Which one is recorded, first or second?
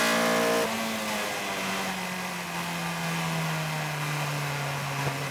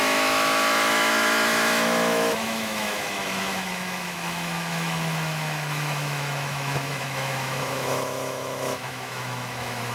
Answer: first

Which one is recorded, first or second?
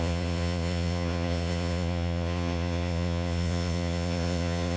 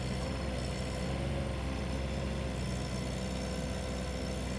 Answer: second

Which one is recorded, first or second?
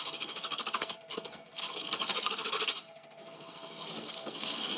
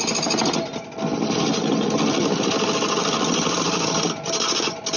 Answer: second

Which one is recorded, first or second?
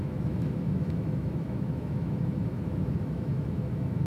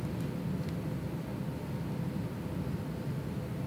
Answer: second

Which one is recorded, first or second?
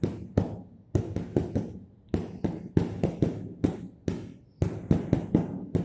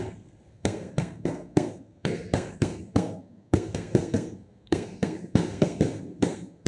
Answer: first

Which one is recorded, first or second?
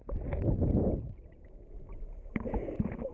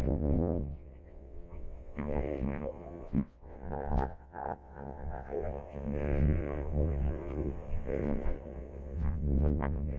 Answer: first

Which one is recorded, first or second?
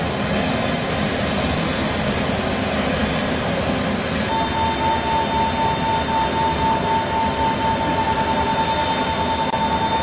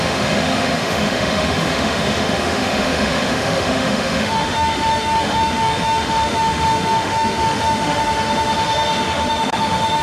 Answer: first